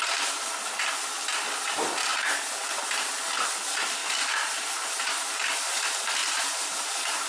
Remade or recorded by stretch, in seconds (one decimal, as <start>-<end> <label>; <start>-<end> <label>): 0.0-2.1 recorded; 2.1-3.1 remade; 3.1-4.0 recorded; 4.0-5.1 remade; 5.1-6.2 recorded; 6.2-7.3 remade